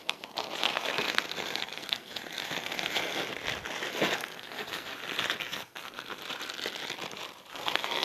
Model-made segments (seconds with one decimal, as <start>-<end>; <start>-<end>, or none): 0.0-3.3; 3.9-4.9; 5.4-6.2; 7.5-8.0